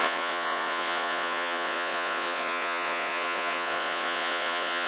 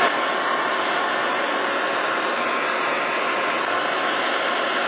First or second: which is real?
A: second